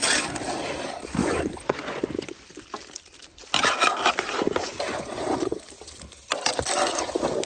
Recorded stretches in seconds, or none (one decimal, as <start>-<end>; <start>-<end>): 0.0-1.2; 2.4-4.9; 5.6-7.5